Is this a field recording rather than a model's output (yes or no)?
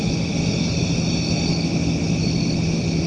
yes